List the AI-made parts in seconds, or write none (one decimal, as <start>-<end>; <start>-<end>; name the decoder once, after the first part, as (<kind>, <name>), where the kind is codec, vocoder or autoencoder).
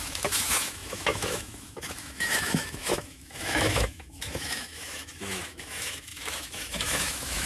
0.0-7.5 (autoencoder, DAC-VAE)